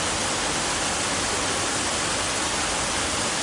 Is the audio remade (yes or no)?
no